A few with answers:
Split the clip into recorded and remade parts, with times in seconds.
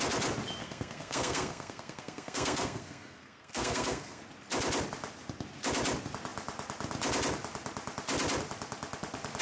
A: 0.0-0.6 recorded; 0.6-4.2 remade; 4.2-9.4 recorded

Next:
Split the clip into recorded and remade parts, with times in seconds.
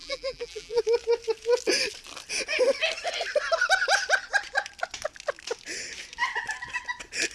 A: 0.0-0.8 remade; 0.8-7.3 recorded